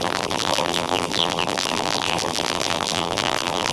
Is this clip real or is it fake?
fake